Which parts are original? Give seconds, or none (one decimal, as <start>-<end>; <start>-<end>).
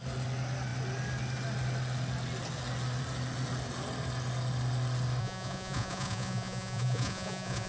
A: 0.0-5.2